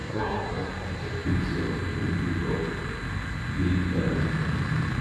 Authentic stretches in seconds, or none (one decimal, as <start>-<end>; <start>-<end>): 0.7-5.0